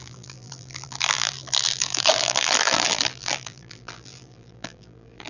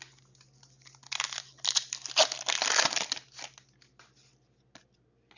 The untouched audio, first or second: second